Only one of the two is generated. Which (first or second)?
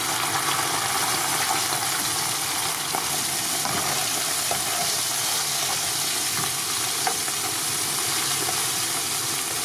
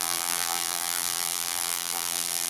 second